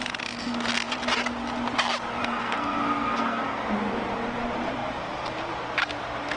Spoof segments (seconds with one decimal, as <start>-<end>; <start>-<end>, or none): 2.2-3.6